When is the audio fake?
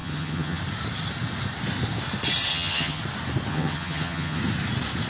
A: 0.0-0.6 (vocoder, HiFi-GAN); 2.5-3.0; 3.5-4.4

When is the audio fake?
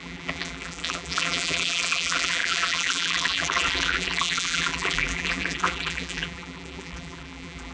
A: 0.0-7.7 (vocoder, BigVGAN v2)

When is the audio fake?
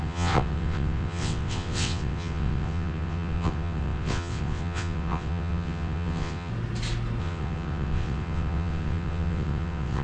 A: 0.0-6.5 (vocoder, WaveNeXt); 7.2-10.0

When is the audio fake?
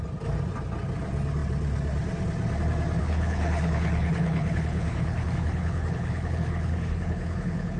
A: 3.0-7.8 (codec, HILCodec)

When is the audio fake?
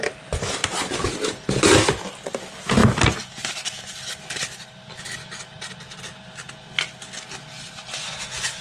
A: none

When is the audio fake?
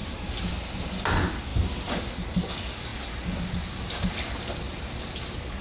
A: none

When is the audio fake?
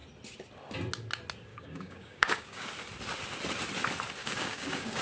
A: 1.5-2.7 (codec, DAC); 4.2-5.0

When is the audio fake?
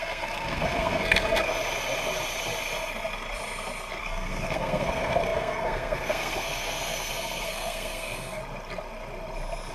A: 0.0-1.5 (codec, SNAC); 4.0-8.4